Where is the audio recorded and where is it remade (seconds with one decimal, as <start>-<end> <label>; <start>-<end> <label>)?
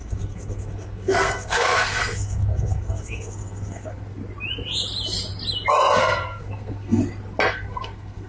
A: 0.0-4.2 remade; 4.2-6.0 recorded; 6.0-7.0 remade; 7.0-7.5 recorded; 7.5-8.3 remade